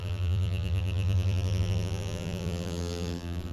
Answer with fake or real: fake